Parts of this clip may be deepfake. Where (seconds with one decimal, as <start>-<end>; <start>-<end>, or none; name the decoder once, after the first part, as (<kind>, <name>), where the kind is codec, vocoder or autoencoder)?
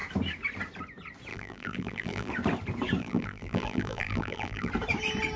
1.3-2.3 (vocoder, BigVGAN v2); 3.0-4.7